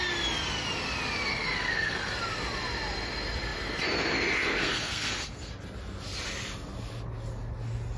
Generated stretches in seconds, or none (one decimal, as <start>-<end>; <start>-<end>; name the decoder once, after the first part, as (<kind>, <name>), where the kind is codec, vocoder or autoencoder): 1.3-2.1 (codec, SNAC); 4.6-5.5

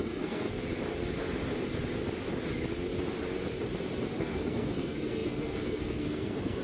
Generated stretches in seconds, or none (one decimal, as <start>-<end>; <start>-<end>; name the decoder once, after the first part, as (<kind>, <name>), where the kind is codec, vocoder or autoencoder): 0.0-0.5 (codec, SNAC); 4.2-6.6

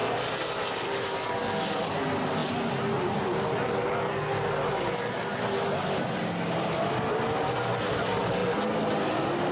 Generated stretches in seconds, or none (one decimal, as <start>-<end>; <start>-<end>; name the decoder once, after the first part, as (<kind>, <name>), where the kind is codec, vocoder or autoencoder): none

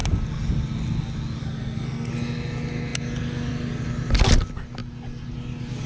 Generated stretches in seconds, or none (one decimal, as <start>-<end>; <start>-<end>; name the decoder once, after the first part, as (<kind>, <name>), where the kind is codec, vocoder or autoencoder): 1.4-2.1 (codec, SNAC)

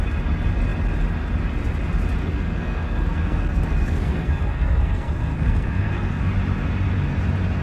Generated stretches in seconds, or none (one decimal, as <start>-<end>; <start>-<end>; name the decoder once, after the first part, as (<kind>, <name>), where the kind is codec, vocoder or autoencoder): 2.2-6.3 (codec, SNAC)

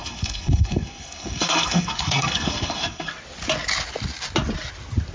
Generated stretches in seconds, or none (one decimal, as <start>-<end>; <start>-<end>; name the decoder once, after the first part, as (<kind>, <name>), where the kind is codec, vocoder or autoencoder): 0.0-3.1 (codec, SNAC)

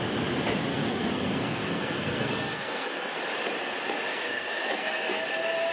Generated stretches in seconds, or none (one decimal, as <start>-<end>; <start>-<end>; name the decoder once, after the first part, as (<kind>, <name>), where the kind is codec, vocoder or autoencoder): 0.7-3.2 (codec, SNAC); 4.1-5.2